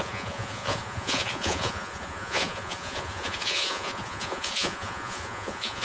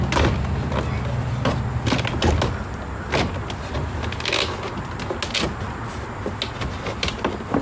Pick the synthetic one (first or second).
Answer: first